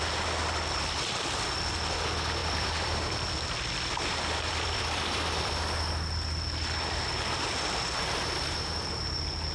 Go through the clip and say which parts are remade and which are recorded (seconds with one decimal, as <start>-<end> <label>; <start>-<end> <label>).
0.0-2.4 recorded; 2.4-5.5 remade; 5.5-9.5 recorded